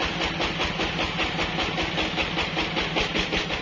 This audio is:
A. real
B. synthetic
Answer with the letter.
A